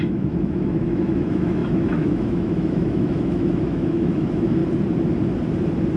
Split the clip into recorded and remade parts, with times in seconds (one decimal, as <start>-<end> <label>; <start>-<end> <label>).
0.0-4.6 remade; 4.6-6.0 recorded